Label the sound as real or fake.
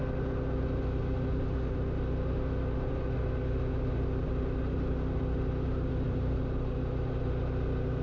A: real